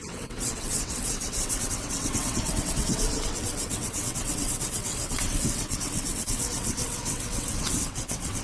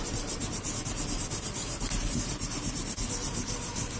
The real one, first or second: second